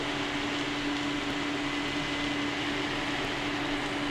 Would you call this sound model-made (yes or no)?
no